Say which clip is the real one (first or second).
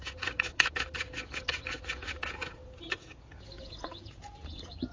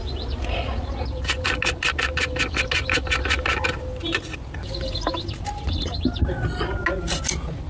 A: second